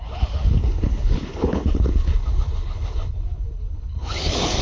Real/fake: fake